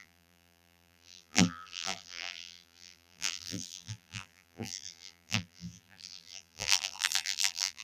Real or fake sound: fake